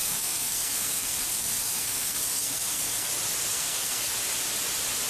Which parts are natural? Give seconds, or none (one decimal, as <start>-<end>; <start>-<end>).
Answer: 3.1-3.5; 4.1-5.1